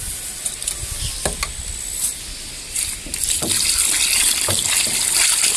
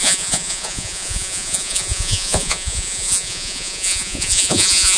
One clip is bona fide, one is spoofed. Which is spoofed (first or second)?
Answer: second